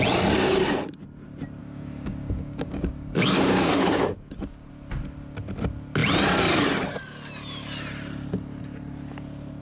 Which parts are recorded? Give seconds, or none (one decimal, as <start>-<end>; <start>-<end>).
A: 0.0-1.6; 4.7-9.6